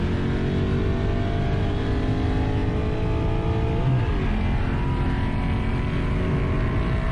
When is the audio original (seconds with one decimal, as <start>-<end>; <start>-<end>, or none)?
0.0-7.1